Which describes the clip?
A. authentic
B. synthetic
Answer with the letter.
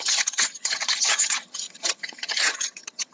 B